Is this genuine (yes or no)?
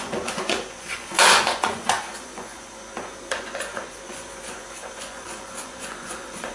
no